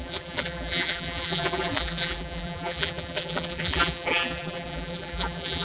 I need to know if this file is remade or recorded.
remade